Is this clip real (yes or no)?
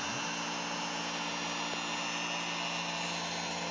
yes